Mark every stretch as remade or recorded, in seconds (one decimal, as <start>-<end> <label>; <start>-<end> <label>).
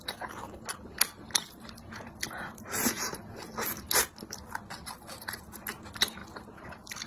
0.0-7.1 recorded